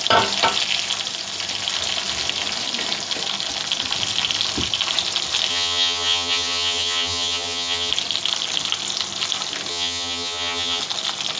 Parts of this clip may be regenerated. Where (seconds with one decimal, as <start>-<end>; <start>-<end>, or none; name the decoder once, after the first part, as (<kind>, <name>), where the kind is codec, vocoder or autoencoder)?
5.5-7.9 (vocoder, HiFi-GAN); 9.7-10.8